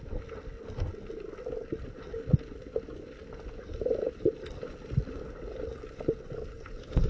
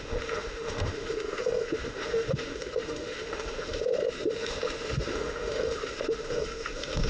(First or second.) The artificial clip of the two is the second